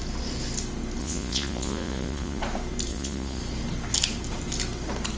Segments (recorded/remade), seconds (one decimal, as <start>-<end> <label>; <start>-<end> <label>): 0.0-1.0 recorded; 1.0-2.4 remade; 2.4-2.9 recorded; 2.9-3.4 remade; 3.4-5.2 recorded